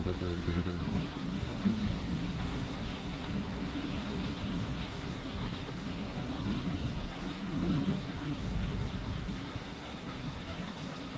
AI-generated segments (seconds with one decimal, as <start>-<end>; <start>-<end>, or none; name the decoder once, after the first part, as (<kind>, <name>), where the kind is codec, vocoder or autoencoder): 0.0-11.2 (codec, SNAC)